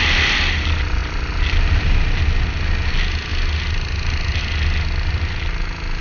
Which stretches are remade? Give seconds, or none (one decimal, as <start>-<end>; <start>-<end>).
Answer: none